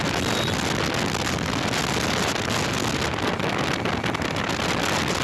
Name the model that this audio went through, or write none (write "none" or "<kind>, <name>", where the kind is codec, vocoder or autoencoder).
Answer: none